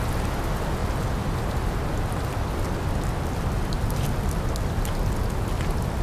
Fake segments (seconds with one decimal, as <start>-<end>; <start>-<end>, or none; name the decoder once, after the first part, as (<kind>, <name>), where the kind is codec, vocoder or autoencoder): none